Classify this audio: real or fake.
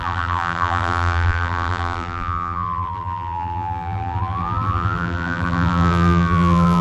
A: fake